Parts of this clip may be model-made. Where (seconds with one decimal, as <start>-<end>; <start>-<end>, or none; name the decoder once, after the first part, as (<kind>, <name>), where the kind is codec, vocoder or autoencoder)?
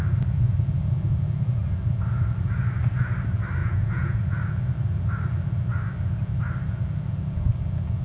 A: 3.6-4.2 (vocoder, Vocos)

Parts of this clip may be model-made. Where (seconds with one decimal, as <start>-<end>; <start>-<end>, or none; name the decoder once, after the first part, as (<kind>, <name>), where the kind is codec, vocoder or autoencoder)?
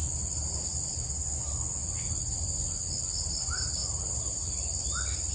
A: none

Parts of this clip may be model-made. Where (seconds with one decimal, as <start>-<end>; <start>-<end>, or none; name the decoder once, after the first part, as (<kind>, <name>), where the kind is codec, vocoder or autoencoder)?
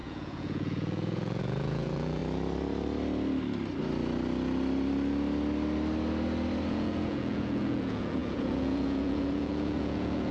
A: 0.0-2.2 (vocoder, Vocos); 6.7-10.3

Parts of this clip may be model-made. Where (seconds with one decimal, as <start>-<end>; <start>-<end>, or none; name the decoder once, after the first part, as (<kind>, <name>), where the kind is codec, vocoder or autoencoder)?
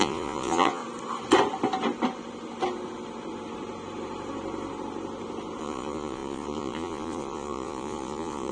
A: 0.0-0.8 (vocoder, Vocos); 5.6-8.5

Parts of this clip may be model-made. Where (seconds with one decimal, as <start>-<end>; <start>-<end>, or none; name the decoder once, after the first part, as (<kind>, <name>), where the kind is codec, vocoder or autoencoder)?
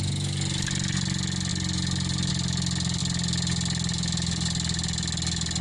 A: none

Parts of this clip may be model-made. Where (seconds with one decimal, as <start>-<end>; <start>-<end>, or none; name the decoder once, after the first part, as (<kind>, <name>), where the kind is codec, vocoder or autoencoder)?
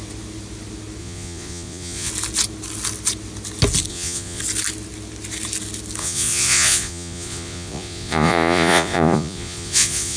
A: 1.0-2.1 (vocoder, Vocos); 3.9-4.4; 6.0-10.2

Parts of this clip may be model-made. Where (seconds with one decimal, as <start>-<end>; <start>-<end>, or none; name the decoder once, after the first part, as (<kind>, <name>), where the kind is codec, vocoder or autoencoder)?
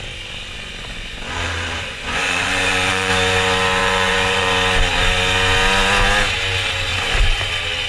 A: 0.5-3.1 (vocoder, Vocos); 3.8-4.5; 6.9-7.4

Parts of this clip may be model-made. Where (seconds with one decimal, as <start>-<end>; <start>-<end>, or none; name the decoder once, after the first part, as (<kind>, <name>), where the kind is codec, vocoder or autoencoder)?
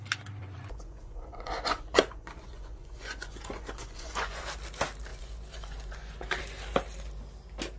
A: 0.4-4.5 (vocoder, Vocos); 5.1-6.4